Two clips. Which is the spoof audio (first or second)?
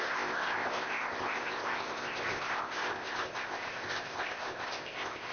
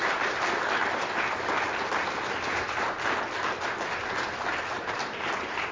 first